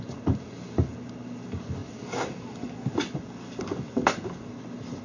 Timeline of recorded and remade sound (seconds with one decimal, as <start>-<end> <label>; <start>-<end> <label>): 0.0-5.0 recorded

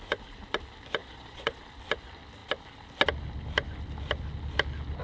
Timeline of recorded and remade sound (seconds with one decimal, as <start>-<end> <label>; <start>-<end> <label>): 0.0-1.0 recorded; 1.0-1.6 remade; 1.6-5.0 recorded

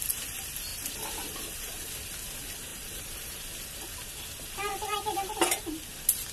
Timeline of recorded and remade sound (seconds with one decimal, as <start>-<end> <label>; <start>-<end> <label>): 0.0-0.7 recorded; 0.7-1.9 remade; 1.9-2.7 recorded; 2.7-3.4 remade; 3.4-4.9 recorded; 4.9-5.7 remade; 5.7-6.3 recorded

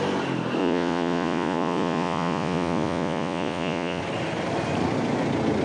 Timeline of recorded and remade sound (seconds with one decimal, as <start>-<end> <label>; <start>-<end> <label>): 0.0-0.6 recorded; 0.6-4.0 remade; 4.0-5.6 recorded

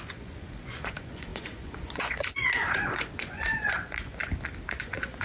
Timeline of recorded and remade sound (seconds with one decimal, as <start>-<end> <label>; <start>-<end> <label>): 0.0-4.2 remade; 4.2-4.8 recorded; 4.8-5.2 remade